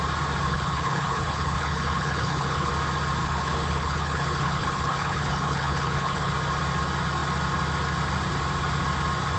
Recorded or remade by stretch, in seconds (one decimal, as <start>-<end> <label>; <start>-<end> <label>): 0.0-0.5 recorded; 0.5-2.7 remade; 2.7-3.2 recorded; 3.2-6.3 remade; 6.3-9.4 recorded